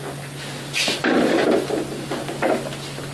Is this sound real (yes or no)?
yes